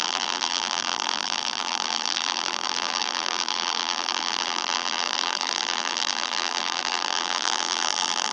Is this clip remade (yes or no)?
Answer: yes